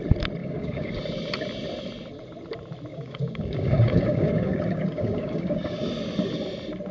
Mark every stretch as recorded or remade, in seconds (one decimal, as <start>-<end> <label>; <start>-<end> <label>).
0.0-0.4 recorded; 0.4-0.9 remade; 0.9-2.9 recorded; 2.9-5.8 remade; 5.8-6.9 recorded